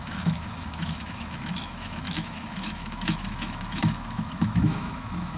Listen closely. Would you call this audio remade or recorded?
remade